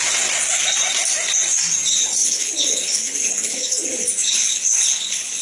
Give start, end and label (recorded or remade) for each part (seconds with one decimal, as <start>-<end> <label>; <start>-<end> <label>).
0.0-2.2 recorded; 2.2-5.4 remade